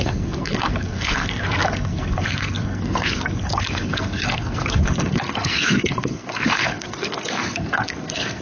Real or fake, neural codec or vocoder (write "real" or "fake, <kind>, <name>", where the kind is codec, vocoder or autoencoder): fake, codec, SNAC